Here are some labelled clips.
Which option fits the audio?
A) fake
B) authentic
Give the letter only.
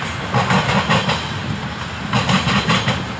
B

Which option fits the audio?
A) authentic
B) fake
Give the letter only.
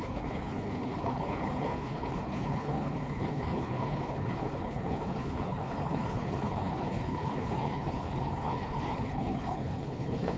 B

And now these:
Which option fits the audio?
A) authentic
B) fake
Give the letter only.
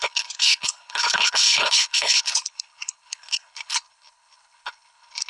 B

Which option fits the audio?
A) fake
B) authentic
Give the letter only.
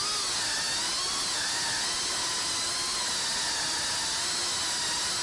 B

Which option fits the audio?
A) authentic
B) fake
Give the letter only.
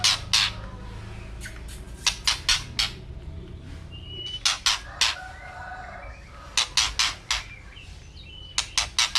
A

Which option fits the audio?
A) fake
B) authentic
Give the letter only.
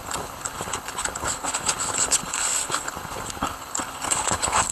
A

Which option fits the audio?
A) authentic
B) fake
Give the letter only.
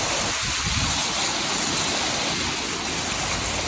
A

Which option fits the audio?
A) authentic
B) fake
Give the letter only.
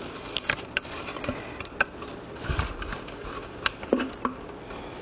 A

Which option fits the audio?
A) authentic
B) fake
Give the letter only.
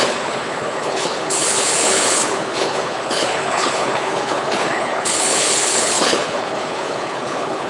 B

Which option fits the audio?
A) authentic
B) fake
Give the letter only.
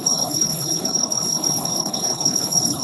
B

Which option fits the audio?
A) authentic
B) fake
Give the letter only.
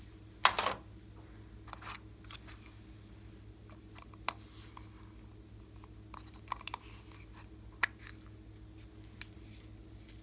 A